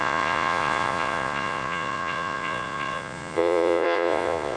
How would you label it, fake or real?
fake